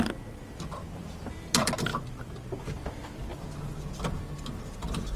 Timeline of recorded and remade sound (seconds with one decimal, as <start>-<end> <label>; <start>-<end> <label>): 0.0-3.3 remade; 3.3-5.2 recorded